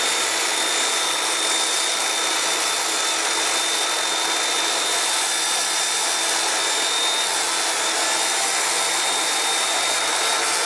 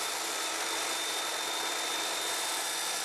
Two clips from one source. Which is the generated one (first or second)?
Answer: second